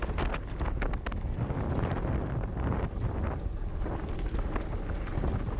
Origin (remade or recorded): recorded